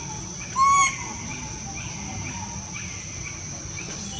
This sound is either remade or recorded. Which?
recorded